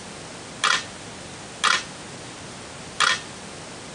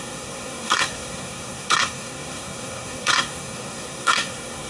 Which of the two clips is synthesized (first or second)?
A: second